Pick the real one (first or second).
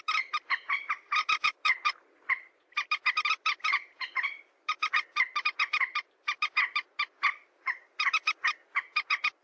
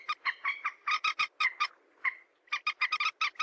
second